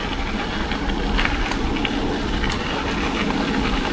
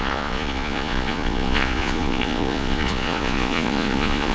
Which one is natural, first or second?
first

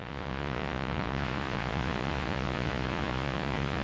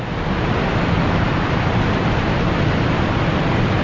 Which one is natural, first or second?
second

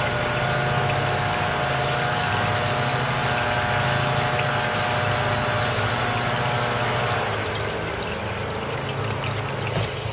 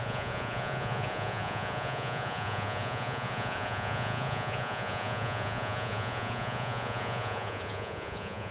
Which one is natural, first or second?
first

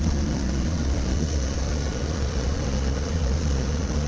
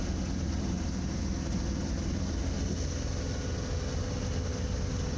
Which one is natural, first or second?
second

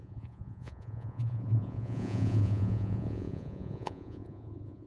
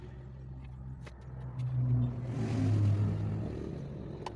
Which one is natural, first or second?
second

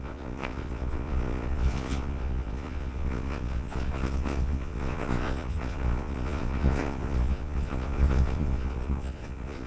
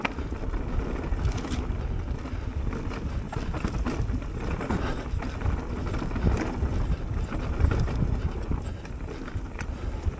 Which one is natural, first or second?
second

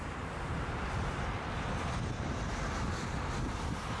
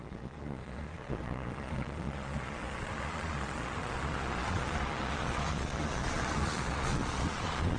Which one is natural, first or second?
first